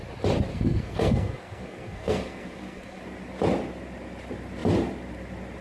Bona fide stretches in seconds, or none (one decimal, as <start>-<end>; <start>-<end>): 0.0-0.5; 3.0-5.6